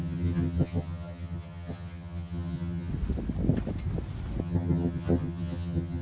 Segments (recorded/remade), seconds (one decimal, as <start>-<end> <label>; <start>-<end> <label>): 0.0-2.9 remade; 2.9-4.4 recorded; 4.4-6.0 remade